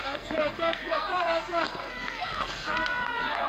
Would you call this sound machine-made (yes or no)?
yes